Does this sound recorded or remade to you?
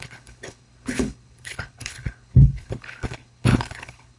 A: remade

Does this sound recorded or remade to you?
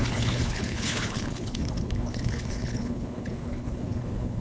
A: remade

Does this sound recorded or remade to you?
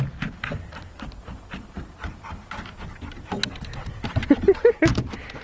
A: recorded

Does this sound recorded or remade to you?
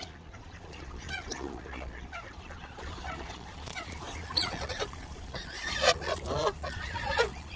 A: remade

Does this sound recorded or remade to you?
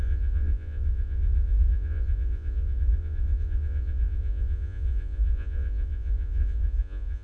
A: remade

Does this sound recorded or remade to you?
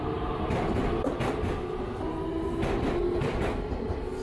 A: recorded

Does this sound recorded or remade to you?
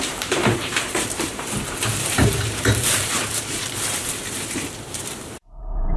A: remade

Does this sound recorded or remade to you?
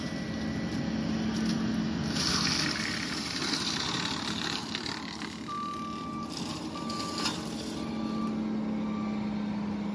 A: recorded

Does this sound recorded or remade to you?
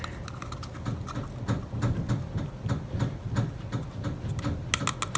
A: recorded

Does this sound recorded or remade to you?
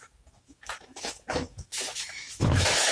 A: remade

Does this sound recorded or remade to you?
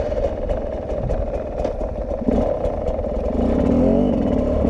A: recorded